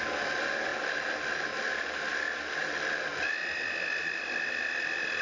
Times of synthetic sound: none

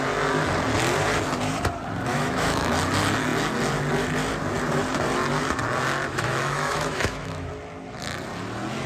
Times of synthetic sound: 2.1-2.7 (autoencoder, DAC-VAE); 6.1-7.5

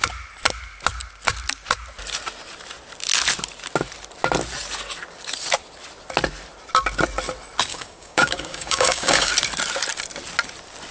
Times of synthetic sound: 7.7-9.3 (codec, DAC)

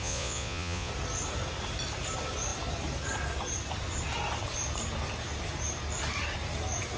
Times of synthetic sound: 0.0-0.9 (vocoder, Vocos)

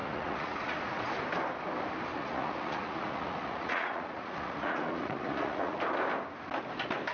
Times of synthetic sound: 0.0-1.0 (vocoder, Vocos); 2.1-5.8

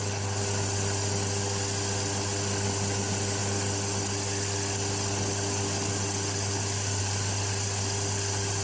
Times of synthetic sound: none

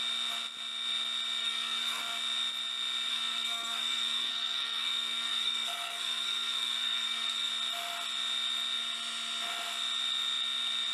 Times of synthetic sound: 1.4-2.0 (codec, SNAC); 3.1-7.5